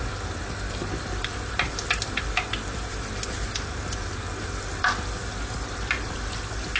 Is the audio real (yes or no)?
yes